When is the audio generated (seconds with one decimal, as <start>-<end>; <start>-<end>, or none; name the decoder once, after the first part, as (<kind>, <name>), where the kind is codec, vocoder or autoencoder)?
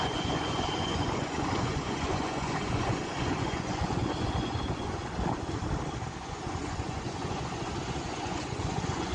0.0-5.0 (vocoder, Vocos); 6.2-9.1